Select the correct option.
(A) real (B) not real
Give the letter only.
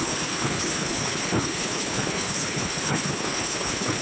B